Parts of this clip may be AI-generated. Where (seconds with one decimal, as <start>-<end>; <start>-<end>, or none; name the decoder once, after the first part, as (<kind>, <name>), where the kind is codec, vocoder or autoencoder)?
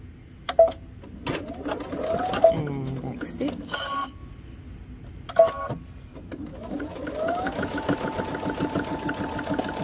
6.5-8.2 (autoencoder, DAC-VAE)